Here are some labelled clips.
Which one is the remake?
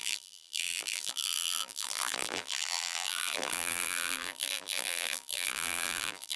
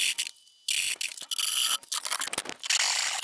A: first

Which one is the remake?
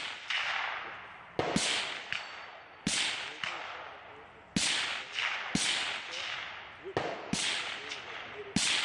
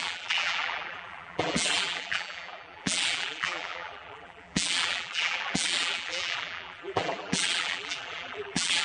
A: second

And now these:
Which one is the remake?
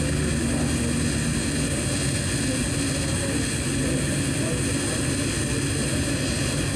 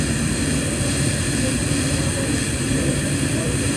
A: second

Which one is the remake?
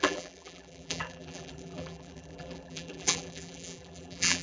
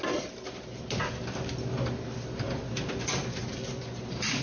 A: first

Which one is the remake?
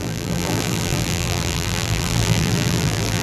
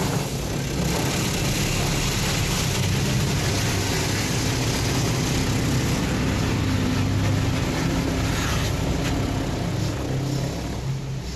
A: first